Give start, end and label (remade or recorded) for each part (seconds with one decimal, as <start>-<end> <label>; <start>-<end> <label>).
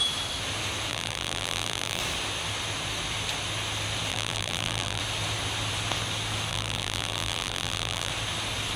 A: 0.0-0.9 recorded; 0.9-2.0 remade; 2.0-4.1 recorded; 4.1-5.0 remade; 5.0-6.5 recorded; 6.5-8.1 remade; 8.1-8.8 recorded